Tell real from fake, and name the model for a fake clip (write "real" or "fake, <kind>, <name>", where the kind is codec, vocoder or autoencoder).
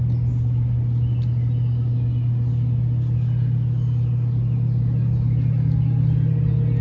real